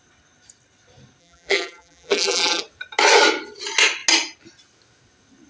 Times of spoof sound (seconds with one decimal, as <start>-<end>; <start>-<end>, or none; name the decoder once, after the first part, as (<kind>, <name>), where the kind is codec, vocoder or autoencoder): 1.2-2.6 (vocoder, BigVGAN v2)